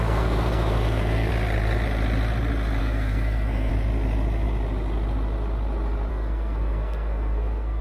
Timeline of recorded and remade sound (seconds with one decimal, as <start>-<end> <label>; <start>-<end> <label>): 0.0-1.3 remade; 1.3-2.8 recorded; 2.8-3.7 remade; 3.7-6.1 recorded; 6.1-7.8 remade